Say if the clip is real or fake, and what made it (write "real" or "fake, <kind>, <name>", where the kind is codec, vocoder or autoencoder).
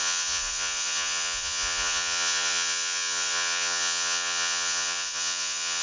fake, vocoder, Vocos